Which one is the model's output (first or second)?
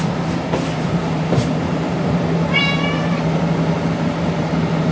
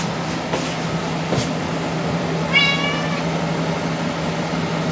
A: first